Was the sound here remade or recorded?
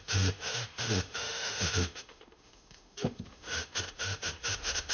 remade